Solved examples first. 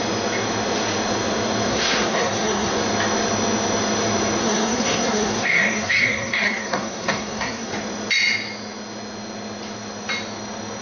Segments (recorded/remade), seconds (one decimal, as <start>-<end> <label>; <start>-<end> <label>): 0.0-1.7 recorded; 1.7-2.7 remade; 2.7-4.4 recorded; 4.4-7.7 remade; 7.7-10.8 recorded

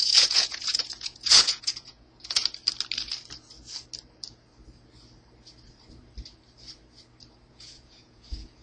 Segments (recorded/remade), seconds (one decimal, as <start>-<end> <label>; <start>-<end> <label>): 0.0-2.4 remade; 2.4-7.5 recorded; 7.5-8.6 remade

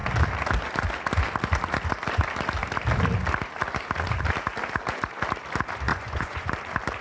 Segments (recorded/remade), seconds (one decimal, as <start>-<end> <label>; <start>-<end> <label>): 0.0-5.9 recorded; 5.9-6.5 remade; 6.5-7.0 recorded

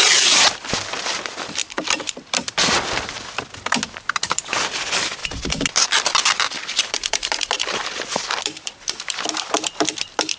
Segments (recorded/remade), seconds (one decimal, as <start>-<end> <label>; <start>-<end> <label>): 0.0-1.6 recorded; 1.6-3.4 remade; 3.4-5.2 recorded; 5.2-9.3 remade; 9.3-10.4 recorded

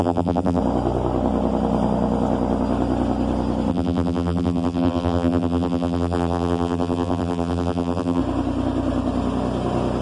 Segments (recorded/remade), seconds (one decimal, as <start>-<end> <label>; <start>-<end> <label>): 0.0-0.6 remade; 0.6-3.7 recorded; 3.7-8.2 remade; 8.2-10.0 recorded

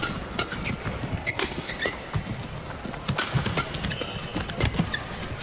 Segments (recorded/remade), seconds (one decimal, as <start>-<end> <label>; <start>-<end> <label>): 0.0-1.1 recorded; 1.1-1.7 remade; 1.7-5.4 recorded

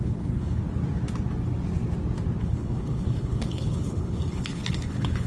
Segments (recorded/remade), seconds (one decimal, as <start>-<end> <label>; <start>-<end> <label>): 0.0-0.6 remade; 0.6-2.4 recorded; 2.4-5.3 remade